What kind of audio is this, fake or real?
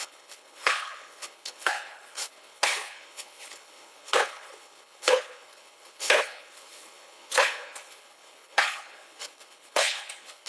fake